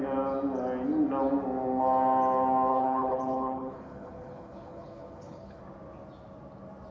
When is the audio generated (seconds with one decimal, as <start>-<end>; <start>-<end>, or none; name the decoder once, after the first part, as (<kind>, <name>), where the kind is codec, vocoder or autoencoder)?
2.7-5.6 (codec, HILCodec)